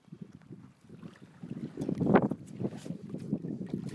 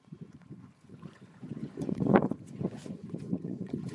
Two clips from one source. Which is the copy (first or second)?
second